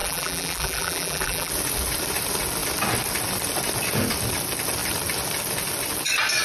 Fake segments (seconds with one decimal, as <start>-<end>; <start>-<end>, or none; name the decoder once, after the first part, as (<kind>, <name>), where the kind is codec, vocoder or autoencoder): 0.0-1.5 (vocoder, BigVGAN v2)

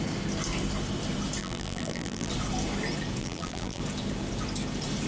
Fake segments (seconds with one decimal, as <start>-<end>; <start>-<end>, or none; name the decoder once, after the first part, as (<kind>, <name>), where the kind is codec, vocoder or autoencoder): 1.4-2.3 (vocoder, BigVGAN v2); 3.2-3.8

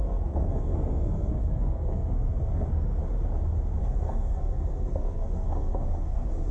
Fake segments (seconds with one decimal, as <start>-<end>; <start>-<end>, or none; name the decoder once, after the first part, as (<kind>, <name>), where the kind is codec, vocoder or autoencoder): 0.0-3.0 (codec, SNAC); 3.8-6.5

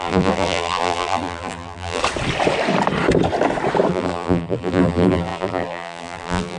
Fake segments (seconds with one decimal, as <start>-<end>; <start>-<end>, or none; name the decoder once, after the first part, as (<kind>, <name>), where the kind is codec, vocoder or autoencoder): 0.0-2.0 (vocoder, BigVGAN v2); 3.9-6.6

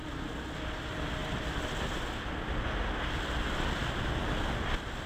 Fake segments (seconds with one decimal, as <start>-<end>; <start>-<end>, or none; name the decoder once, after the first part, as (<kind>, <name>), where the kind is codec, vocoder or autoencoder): none

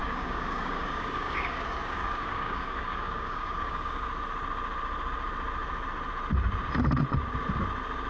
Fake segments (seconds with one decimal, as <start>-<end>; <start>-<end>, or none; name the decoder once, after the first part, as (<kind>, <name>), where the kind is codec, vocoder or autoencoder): 0.0-4.1 (codec, DAC)